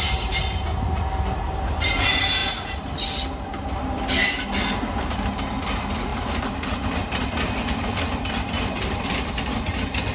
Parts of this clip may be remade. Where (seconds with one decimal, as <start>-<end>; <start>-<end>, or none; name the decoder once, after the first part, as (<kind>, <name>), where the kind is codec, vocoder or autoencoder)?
none